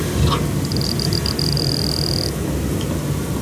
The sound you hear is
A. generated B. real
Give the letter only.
B